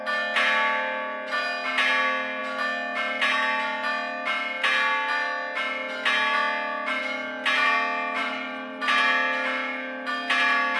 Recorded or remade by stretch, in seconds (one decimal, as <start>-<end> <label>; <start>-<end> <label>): 0.0-8.2 recorded; 8.2-8.8 remade; 8.8-10.8 recorded